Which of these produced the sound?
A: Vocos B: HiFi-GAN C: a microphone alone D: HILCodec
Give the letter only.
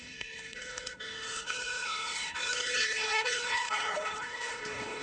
D